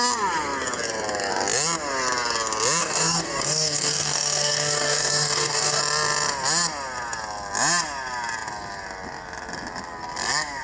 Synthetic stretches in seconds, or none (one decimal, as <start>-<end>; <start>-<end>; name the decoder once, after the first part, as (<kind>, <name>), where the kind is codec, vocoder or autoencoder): 2.8-5.8 (codec, DAC)